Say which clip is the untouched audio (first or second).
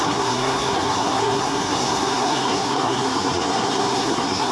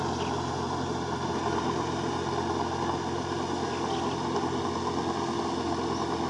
second